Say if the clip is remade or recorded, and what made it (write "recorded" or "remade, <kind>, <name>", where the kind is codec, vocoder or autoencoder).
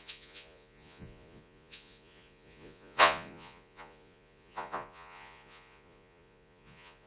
remade, vocoder, Vocos